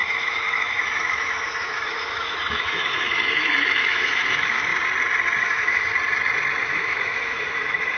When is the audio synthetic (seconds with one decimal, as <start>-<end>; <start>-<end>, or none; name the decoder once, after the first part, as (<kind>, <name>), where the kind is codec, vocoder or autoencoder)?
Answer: 0.0-4.7 (autoencoder, DAC-VAE); 5.4-5.9; 6.6-8.0